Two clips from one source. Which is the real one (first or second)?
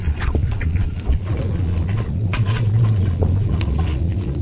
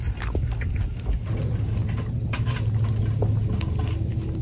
second